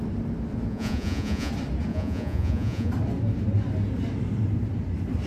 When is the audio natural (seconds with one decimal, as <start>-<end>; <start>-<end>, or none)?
0.0-0.7; 1.5-1.9; 2.9-5.3